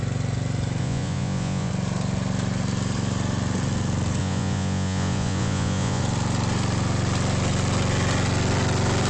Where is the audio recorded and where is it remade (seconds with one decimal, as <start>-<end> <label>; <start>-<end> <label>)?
0.0-0.8 recorded; 0.8-1.7 remade; 1.7-4.2 recorded; 4.2-6.0 remade; 6.0-9.1 recorded